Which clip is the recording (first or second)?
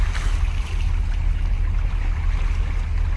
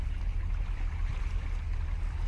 first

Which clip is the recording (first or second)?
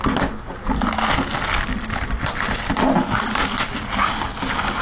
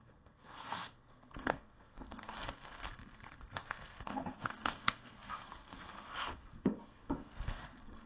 first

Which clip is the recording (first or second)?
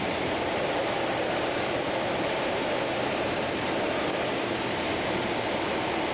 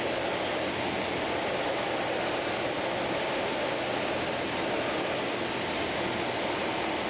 second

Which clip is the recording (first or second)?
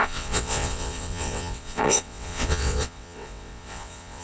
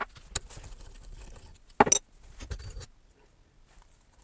second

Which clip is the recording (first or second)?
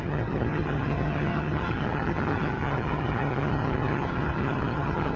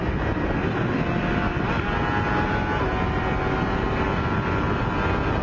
second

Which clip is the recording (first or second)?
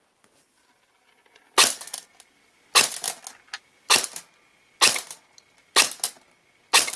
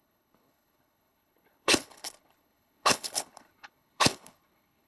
first